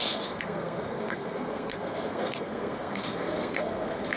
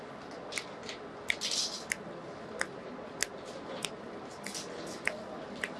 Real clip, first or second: second